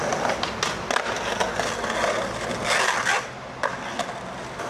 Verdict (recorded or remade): recorded